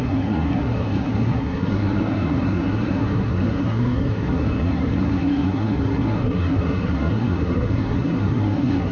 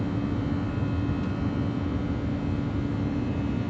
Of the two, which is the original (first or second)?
second